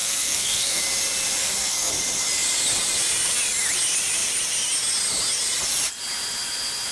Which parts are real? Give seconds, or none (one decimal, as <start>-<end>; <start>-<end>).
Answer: 0.8-1.4; 1.9-6.9